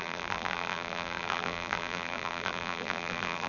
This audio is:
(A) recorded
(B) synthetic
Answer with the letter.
B